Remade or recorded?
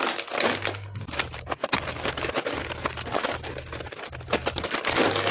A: recorded